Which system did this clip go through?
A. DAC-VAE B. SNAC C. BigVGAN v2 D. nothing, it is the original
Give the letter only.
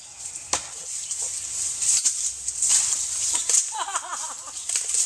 D